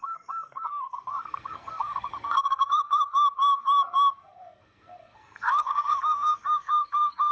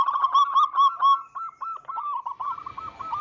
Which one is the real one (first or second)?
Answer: second